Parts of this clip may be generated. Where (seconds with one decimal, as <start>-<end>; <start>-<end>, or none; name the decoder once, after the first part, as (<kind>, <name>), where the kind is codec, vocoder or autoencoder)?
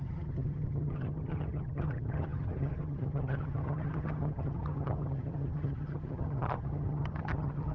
0.0-7.7 (vocoder, HiFi-GAN)